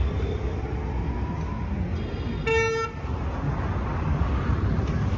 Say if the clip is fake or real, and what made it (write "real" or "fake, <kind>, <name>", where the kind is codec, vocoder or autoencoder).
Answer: real